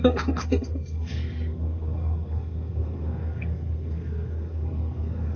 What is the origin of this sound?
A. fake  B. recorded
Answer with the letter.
A